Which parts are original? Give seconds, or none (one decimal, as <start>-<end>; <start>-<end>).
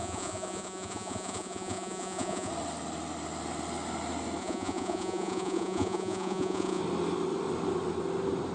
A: 2.5-4.4; 6.8-8.5